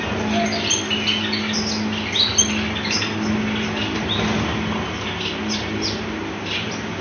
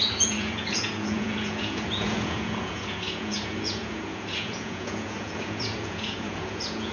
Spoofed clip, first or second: second